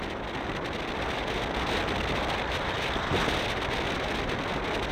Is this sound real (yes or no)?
yes